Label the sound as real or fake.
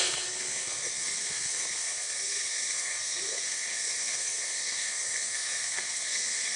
fake